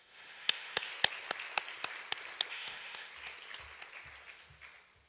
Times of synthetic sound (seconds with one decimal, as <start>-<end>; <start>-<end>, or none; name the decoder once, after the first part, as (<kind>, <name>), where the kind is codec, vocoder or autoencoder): 0.0-0.9 (autoencoder, DAC-VAE); 2.5-3.1